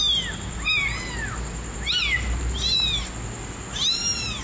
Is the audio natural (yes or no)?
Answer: yes